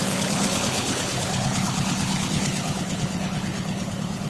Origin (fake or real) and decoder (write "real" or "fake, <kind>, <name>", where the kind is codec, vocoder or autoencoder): fake, codec, HILCodec